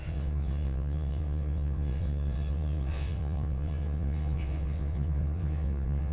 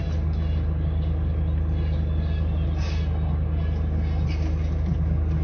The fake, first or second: first